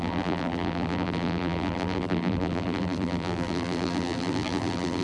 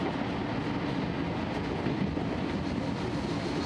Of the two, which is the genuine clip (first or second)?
second